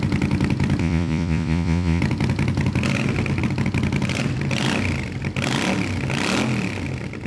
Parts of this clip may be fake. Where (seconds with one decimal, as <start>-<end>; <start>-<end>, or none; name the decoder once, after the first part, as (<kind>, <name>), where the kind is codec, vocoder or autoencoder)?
0.8-2.0 (vocoder, Vocos)